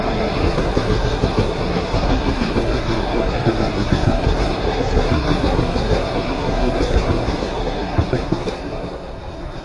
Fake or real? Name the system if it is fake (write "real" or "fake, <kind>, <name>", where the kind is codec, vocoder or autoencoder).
fake, codec, SNAC